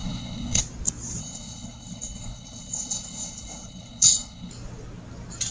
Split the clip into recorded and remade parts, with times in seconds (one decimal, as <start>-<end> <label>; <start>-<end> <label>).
0.0-0.6 remade; 0.6-1.2 recorded; 1.2-4.5 remade; 4.5-5.5 recorded